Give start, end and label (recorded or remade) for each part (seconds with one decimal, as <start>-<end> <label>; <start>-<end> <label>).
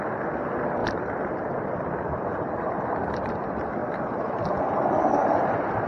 0.0-0.8 recorded; 0.8-3.3 remade; 3.3-3.8 recorded; 3.8-4.4 remade; 4.4-5.2 recorded; 5.2-5.9 remade